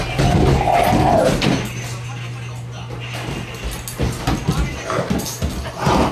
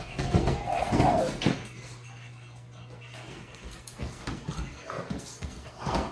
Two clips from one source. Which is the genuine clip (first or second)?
first